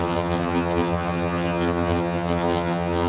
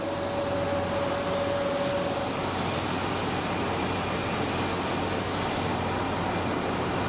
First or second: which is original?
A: second